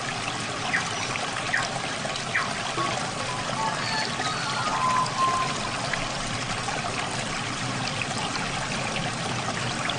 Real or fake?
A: real